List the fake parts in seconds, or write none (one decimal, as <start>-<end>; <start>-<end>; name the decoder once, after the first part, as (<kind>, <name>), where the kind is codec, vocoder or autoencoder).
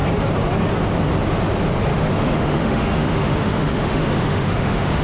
1.9-5.0 (autoencoder, DAC-VAE)